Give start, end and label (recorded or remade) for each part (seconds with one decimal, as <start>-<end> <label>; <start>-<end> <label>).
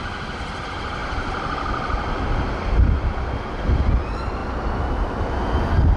0.0-6.0 recorded